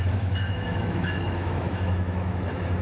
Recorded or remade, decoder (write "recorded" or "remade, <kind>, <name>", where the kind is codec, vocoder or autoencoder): remade, autoencoder, DAC-VAE